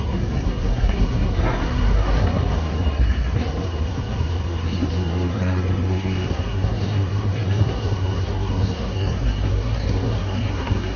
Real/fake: fake